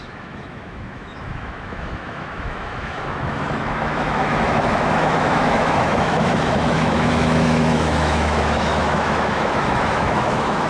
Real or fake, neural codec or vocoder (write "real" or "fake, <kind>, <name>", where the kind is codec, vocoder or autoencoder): fake, autoencoder, DAC-VAE